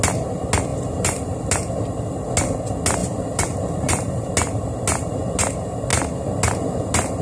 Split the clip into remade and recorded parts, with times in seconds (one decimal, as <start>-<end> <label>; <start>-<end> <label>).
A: 0.0-0.7 recorded; 0.7-1.4 remade; 1.4-3.0 recorded; 3.0-4.3 remade; 4.3-7.2 recorded